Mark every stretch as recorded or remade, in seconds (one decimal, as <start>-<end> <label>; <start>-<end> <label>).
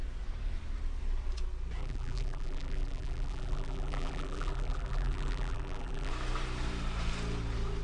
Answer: 0.0-1.8 recorded; 1.8-6.1 remade; 6.1-7.8 recorded